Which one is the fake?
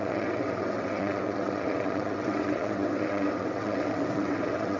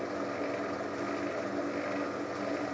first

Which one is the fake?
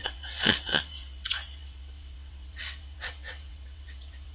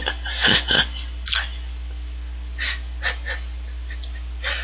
first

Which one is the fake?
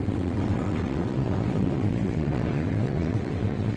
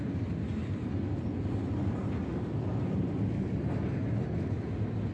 first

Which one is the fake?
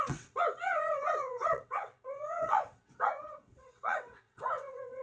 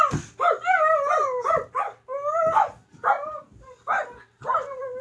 first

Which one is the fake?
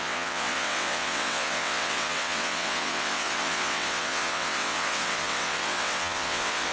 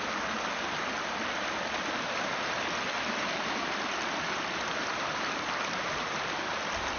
first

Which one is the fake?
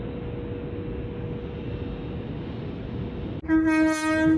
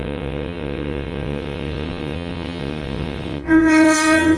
second